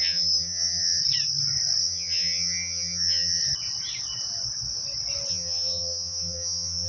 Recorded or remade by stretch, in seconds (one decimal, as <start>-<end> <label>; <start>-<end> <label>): 0.0-1.0 remade; 1.0-1.8 recorded; 1.8-3.4 remade; 3.4-5.3 recorded; 5.3-6.9 remade